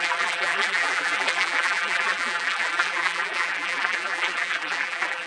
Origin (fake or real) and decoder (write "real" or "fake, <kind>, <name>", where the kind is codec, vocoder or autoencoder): fake, vocoder, BigVGAN v2